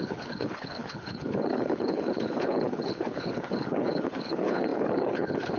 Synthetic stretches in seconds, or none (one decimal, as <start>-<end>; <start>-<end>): 0.0-5.6